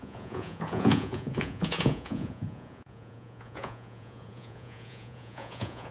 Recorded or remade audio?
remade